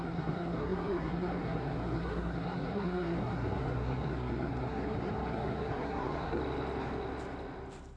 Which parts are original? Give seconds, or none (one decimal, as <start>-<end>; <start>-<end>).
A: 6.4-8.0